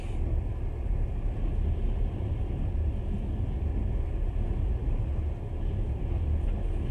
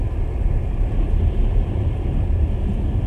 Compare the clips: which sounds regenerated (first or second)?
second